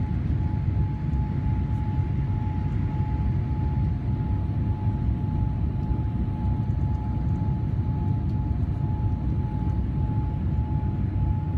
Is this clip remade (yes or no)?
no